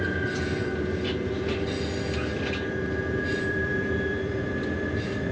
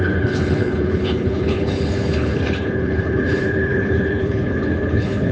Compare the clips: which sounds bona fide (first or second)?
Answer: first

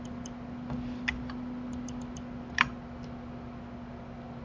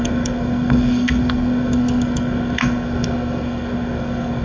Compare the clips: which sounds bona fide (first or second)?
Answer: first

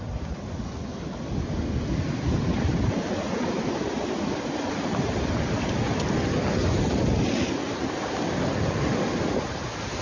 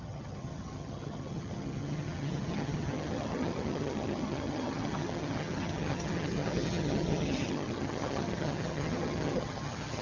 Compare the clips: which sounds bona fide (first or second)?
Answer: first